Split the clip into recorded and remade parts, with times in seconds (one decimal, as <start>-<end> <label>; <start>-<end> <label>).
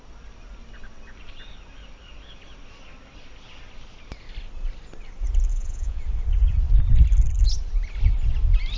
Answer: 0.0-5.5 recorded; 5.5-6.0 remade; 6.0-8.8 recorded